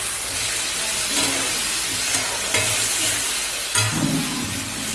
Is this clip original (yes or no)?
yes